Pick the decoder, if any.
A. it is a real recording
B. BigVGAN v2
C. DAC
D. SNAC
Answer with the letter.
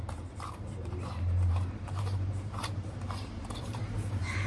B